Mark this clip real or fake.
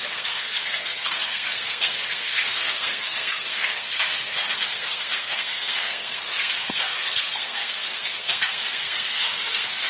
fake